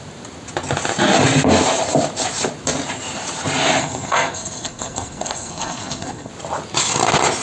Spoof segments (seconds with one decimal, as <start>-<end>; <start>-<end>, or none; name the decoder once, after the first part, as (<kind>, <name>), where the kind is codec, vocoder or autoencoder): 3.8-6.3 (codec, SNAC)